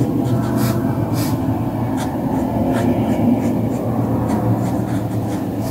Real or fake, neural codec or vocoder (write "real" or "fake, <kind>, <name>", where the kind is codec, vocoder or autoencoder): real